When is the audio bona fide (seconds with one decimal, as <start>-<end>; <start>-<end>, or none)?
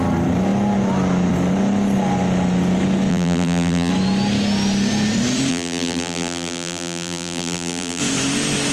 0.0-3.1; 3.9-5.5; 8.0-8.7